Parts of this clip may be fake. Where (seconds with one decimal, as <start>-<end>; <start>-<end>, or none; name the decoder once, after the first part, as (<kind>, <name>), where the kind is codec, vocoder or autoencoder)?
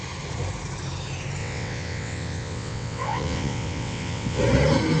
1.4-4.4 (vocoder, WaveNeXt)